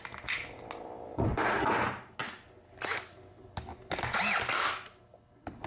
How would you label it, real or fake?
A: real